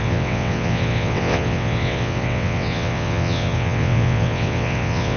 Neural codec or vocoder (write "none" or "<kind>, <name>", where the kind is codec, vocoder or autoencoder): vocoder, WaveNeXt